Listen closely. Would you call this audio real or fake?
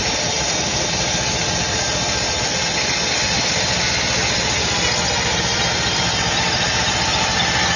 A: real